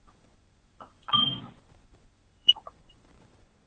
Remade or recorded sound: remade